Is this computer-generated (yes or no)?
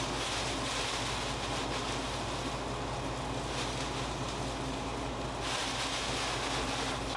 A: no